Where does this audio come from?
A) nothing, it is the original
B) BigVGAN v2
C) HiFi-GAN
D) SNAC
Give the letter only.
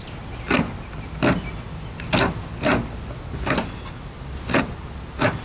A